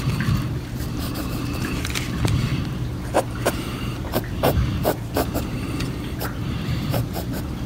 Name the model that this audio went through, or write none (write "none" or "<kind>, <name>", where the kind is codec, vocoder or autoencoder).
vocoder, BigVGAN v2